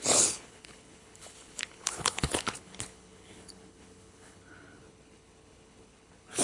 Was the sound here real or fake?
fake